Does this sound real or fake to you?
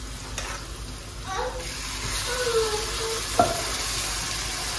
real